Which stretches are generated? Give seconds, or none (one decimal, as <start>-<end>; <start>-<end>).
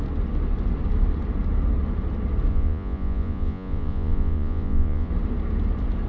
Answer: 2.5-5.1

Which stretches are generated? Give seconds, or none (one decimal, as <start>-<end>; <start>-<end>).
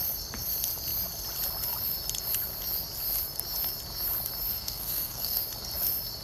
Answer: 4.5-5.4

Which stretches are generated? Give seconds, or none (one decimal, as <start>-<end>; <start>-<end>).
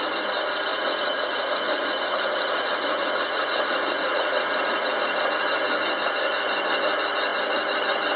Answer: 0.7-5.2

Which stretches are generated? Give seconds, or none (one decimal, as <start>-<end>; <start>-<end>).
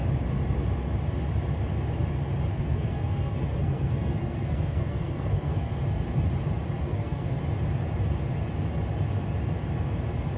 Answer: 2.5-5.7; 6.8-7.3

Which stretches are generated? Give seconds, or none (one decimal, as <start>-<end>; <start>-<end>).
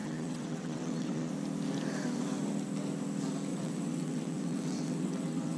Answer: 0.0-1.3; 3.5-5.6